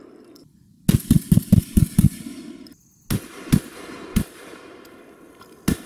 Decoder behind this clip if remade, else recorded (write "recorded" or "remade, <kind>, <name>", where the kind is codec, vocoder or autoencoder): recorded